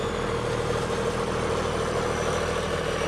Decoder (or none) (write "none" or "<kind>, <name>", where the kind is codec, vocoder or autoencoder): none